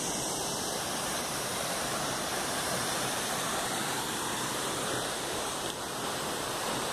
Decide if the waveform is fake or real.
fake